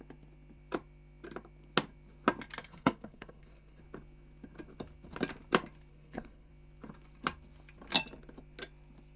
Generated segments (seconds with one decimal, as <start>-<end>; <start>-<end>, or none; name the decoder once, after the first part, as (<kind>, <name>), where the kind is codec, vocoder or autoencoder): 2.6-3.8 (codec, SNAC); 5.9-6.5